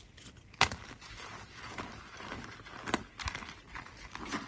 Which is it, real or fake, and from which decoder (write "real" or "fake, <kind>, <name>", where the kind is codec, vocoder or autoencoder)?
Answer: real